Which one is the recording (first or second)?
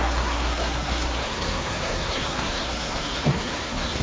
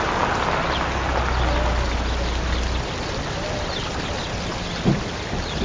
second